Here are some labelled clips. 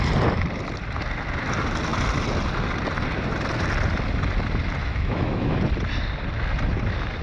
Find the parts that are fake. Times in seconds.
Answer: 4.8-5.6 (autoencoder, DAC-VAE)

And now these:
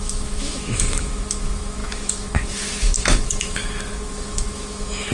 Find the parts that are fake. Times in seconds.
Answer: 0.0-5.1 (autoencoder, DAC-VAE)